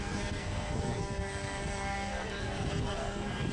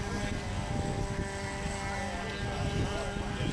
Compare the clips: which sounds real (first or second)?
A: second